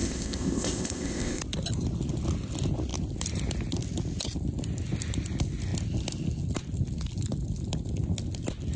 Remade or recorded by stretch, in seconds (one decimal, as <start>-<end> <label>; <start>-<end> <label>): 0.0-1.4 remade; 1.4-8.8 recorded